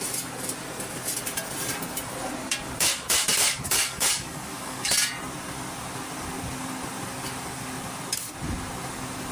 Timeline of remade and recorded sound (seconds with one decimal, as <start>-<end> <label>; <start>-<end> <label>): 0.0-3.3 recorded; 3.3-4.9 remade; 4.9-9.3 recorded